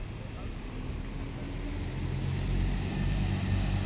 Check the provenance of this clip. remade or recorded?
recorded